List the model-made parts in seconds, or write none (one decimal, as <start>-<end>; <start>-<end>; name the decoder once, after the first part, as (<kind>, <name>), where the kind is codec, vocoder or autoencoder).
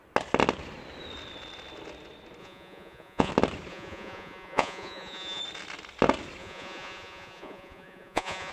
2.4-3.3 (vocoder, Vocos); 3.7-5.4; 6.4-8.5